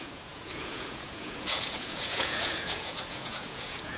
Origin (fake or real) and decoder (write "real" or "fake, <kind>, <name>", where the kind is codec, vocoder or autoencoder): fake, vocoder, Vocos